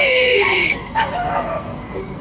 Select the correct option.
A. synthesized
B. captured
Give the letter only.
A